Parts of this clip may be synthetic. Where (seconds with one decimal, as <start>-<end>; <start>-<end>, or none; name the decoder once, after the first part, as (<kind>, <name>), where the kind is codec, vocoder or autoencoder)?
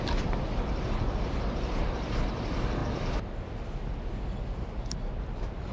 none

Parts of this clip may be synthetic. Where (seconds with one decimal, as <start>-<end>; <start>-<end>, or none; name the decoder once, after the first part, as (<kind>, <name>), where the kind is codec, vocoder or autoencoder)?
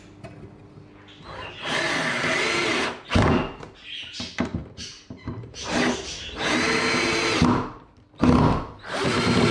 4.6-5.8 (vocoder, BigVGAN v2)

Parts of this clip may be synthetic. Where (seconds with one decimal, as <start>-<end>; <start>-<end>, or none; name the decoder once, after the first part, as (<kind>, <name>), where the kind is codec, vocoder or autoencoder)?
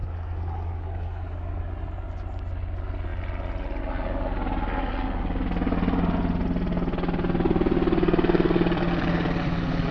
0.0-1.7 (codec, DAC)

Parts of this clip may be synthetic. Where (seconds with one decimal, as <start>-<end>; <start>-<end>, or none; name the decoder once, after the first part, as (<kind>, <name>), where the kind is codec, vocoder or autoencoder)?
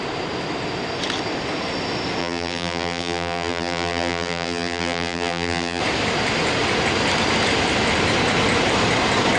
2.2-5.8 (vocoder, BigVGAN v2)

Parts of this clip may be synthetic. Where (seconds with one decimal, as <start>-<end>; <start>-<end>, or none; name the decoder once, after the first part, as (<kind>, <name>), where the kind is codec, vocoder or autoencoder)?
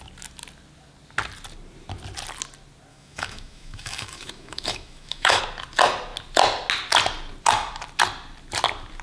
2.9-5.4 (autoencoder, DAC-VAE)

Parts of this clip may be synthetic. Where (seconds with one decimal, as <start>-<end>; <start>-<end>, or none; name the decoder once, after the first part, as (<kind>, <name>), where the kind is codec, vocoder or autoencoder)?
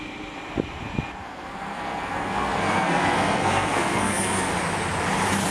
1.2-4.5 (codec, SNAC)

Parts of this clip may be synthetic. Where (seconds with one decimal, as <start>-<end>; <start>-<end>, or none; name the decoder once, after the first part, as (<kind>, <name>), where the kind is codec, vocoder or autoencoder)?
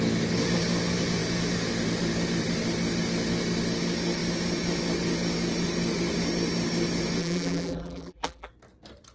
7.2-8.5 (vocoder, BigVGAN v2)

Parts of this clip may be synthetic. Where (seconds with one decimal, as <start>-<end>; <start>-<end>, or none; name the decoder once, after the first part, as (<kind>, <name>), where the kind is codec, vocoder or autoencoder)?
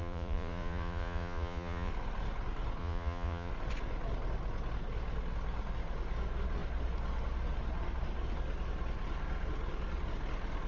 0.0-1.9 (vocoder, Vocos); 2.8-3.5